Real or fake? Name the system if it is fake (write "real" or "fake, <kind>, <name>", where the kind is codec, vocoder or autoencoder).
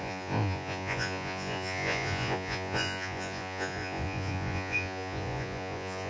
fake, vocoder, Vocos